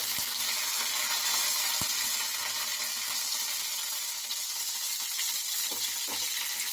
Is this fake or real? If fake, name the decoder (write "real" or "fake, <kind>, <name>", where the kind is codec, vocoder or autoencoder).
real